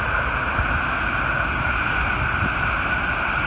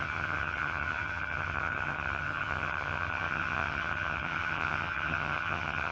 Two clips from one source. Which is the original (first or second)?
first